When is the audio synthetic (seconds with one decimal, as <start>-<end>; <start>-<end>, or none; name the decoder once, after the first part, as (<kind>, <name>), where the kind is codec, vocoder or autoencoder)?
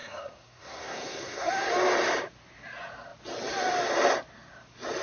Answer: 0.0-1.5 (codec, SNAC)